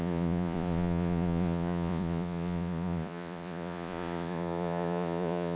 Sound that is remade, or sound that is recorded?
remade